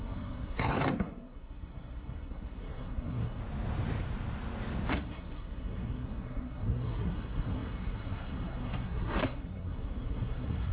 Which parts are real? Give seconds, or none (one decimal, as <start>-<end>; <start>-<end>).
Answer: 3.4-4.9